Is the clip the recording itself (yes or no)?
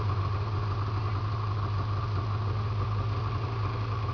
yes